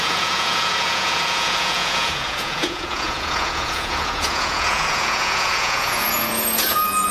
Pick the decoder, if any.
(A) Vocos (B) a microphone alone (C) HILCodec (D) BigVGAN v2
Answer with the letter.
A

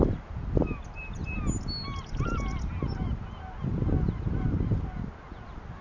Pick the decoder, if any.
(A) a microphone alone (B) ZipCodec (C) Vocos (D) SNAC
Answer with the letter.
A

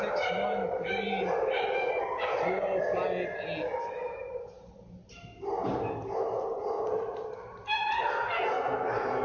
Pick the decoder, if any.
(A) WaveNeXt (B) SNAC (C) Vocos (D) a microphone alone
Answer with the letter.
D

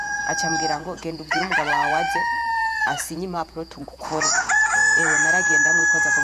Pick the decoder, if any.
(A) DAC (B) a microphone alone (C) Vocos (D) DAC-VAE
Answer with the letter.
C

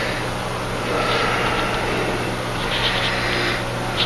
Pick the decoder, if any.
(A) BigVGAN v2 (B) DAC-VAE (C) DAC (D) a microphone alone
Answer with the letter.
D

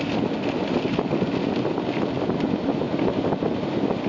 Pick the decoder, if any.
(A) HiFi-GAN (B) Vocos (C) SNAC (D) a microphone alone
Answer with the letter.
D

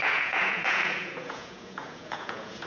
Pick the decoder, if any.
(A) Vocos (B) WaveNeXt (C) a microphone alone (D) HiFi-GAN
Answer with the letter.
A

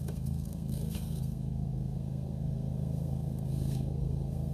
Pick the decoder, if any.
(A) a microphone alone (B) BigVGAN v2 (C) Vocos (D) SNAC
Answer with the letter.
D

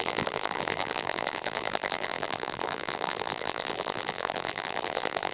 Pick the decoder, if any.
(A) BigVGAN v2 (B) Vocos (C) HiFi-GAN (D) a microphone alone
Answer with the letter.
A